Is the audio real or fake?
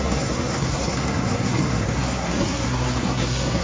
fake